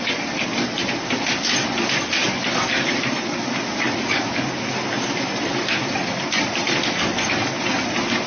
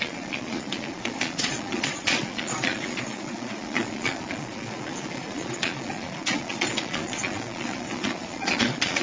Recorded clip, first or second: first